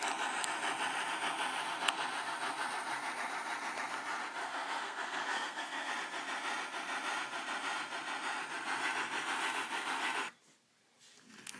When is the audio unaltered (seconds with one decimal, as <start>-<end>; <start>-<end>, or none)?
0.0-4.4; 5.9-11.6